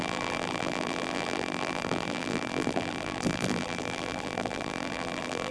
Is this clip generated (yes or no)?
yes